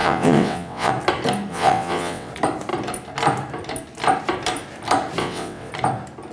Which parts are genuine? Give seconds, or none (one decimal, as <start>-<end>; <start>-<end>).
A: 0.9-1.5; 2.3-5.2; 5.7-6.3